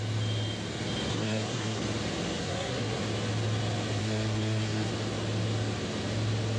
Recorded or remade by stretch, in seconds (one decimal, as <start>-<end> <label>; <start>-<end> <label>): 0.0-1.1 recorded; 1.1-1.8 remade; 1.8-2.4 recorded; 2.4-3.0 remade; 3.0-4.0 recorded; 4.0-4.9 remade; 4.9-6.6 recorded